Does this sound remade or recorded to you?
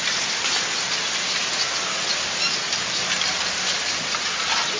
recorded